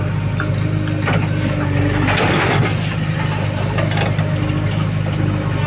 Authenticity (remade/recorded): recorded